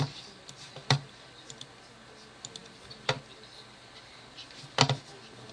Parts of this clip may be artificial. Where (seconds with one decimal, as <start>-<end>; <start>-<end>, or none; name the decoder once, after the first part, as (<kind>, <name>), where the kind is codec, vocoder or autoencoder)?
none